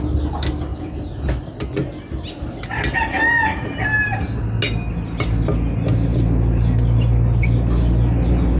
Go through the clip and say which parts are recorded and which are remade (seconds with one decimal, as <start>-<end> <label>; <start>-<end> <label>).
0.0-8.6 recorded